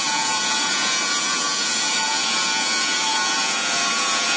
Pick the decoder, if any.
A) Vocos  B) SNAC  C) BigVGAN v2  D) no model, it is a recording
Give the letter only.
A